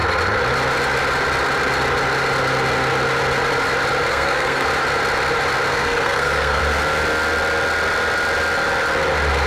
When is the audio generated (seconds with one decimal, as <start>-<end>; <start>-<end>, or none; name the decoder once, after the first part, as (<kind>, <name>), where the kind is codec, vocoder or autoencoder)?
4.1-4.7 (codec, SNAC); 5.7-6.6